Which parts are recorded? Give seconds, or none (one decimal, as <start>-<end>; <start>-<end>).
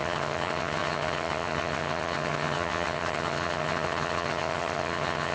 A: none